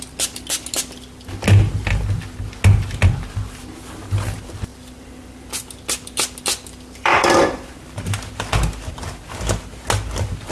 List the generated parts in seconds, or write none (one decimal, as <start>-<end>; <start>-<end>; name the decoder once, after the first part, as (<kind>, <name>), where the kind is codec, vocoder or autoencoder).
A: 4.7-7.7 (vocoder, BigVGAN v2)